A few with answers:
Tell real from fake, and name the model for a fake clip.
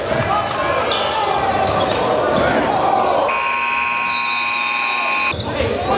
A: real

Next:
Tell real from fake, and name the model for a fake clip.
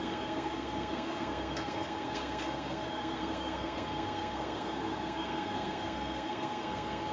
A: fake, codec, SNAC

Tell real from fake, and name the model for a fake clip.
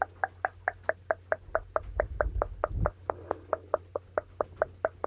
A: real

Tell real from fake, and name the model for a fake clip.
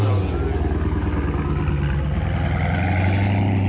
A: real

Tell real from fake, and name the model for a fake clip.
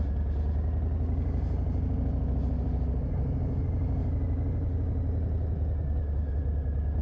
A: real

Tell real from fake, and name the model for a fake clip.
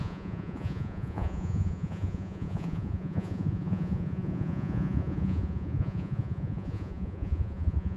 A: fake, vocoder, Vocos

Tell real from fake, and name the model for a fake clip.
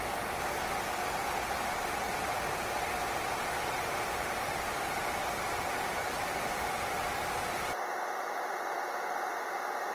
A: real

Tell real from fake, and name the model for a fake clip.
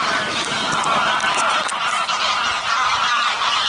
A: real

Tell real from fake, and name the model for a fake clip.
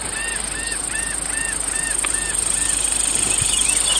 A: fake, vocoder, BigVGAN v2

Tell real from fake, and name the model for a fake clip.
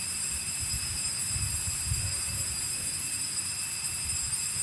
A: fake, vocoder, BigVGAN v2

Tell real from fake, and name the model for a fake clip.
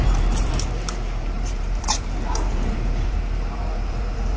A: fake, vocoder, BigVGAN v2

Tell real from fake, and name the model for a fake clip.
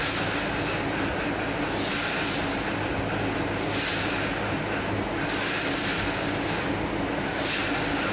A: real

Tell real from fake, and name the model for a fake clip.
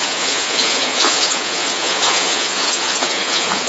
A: fake, vocoder, Vocos